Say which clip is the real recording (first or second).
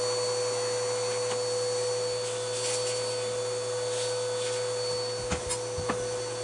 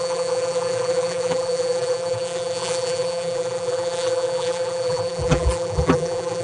first